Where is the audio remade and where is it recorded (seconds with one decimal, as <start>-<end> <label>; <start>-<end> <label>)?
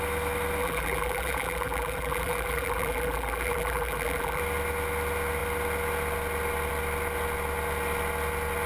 0.0-0.6 recorded; 0.6-4.4 remade; 4.4-8.7 recorded